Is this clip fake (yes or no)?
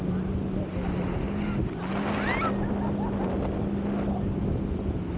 no